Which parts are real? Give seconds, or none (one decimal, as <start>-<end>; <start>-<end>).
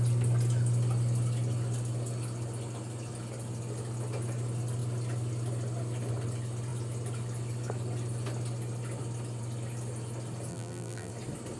0.0-10.5; 11.1-11.6